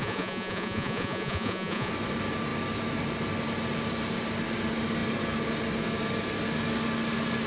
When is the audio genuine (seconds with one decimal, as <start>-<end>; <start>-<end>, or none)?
1.9-7.5